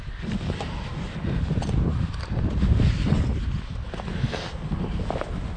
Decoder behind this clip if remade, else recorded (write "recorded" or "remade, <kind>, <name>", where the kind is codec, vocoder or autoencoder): recorded